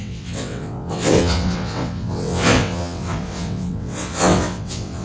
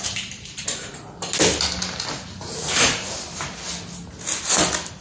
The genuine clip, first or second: second